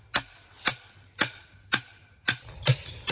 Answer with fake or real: real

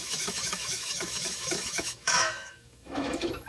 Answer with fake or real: fake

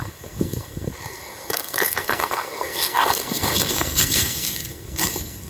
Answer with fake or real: fake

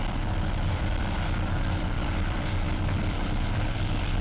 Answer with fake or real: fake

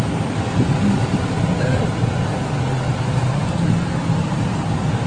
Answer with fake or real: real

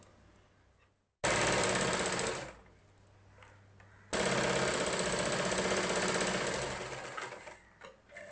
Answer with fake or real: real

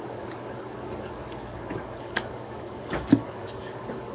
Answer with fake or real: fake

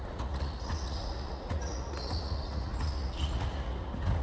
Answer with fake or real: fake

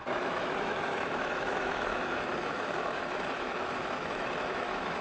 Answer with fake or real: fake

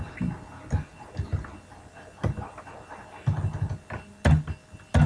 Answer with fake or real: real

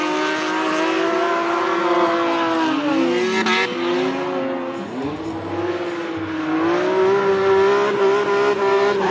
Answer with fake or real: real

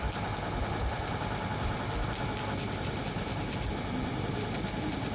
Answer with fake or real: real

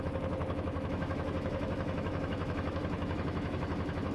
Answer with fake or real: fake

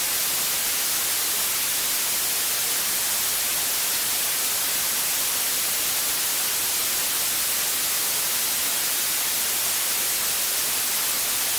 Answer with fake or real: real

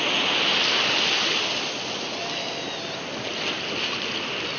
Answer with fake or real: real